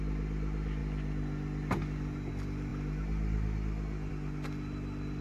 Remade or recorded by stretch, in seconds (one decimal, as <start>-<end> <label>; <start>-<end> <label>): 0.0-5.2 recorded